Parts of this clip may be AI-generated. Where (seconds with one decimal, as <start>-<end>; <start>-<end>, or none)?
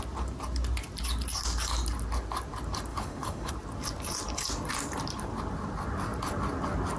2.9-3.5